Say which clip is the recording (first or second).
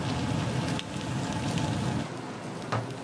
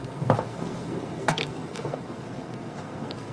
first